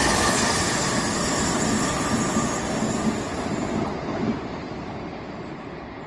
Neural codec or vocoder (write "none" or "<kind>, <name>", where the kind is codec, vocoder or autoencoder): none